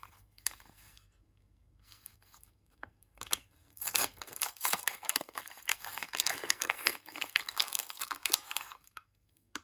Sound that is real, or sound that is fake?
fake